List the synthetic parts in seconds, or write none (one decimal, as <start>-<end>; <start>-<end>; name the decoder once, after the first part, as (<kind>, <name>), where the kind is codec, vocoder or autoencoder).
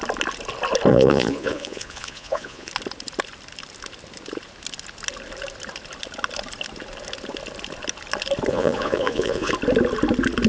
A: 0.9-2.7 (vocoder, Vocos); 8.5-9.5